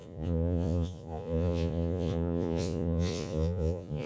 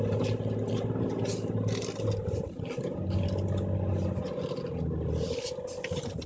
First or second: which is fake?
first